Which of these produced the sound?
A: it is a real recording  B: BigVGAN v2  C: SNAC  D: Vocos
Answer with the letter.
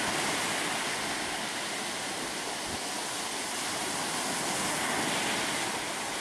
A